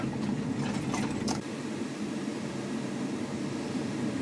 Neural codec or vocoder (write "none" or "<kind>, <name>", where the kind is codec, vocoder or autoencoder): vocoder, BigVGAN v2